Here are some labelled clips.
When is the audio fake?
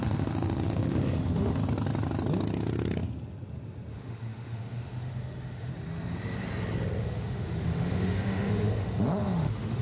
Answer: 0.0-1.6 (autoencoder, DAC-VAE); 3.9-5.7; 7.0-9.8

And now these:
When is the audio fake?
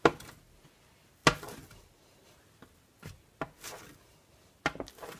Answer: none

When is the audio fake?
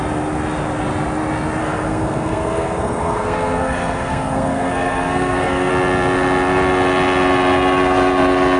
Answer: 1.6-5.7 (codec, SNAC)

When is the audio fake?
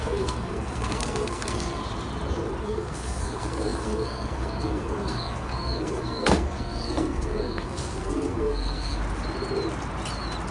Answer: 0.0-1.8 (codec, SNAC); 2.6-9.0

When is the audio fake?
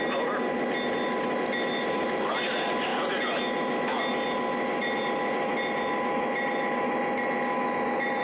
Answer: none